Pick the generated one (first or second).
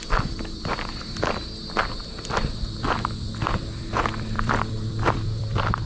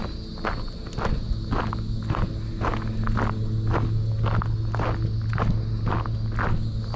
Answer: first